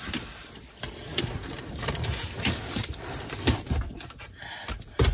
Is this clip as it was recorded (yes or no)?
yes